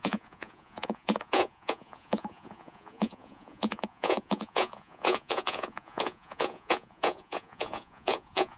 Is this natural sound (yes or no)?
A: no